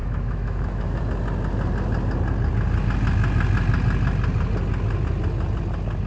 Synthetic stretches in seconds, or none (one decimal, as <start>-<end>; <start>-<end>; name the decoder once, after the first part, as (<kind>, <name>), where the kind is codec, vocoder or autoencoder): 0.0-1.0 (autoencoder, DAC-VAE)

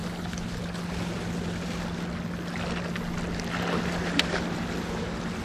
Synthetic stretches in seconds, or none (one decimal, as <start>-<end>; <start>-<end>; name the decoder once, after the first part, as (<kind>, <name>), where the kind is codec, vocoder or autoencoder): none

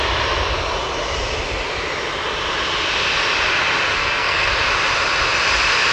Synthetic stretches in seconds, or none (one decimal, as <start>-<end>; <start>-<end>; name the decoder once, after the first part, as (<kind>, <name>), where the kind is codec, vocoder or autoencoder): 3.9-4.5 (codec, SNAC)

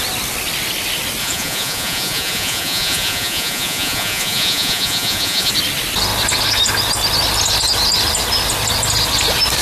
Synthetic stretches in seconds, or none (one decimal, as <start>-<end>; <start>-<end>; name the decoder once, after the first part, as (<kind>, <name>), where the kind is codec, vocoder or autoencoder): 1.2-5.5 (vocoder, Vocos)

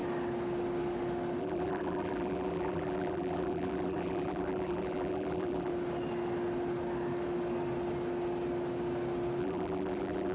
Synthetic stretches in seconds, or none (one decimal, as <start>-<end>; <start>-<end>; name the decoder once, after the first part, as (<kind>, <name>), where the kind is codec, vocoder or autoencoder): 1.4-5.7 (vocoder, BigVGAN v2); 9.4-10.3

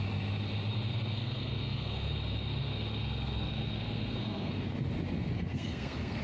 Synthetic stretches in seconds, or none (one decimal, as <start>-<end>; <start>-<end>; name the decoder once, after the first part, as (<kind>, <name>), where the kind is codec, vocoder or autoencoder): 0.9-2.1 (codec, SNAC); 2.6-4.5; 5.5-6.2

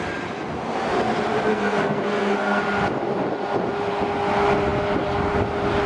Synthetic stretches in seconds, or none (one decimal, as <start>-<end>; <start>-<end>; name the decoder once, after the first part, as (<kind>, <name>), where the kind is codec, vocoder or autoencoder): 1.5-2.6 (codec, SNAC)